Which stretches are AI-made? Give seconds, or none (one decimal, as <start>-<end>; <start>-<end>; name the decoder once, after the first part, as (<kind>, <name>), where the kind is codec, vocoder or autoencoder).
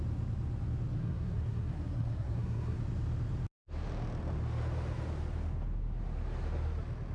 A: 1.0-2.8 (codec, SNAC)